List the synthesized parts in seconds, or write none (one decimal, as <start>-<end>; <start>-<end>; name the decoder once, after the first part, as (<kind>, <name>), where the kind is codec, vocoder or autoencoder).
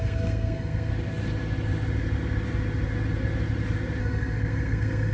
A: 0.0-0.9 (codec, SNAC); 4.0-5.1